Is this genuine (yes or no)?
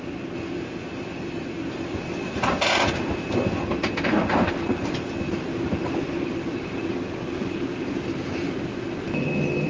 yes